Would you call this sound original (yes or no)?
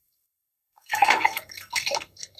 no